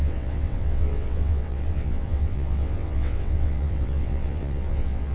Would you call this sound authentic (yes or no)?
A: no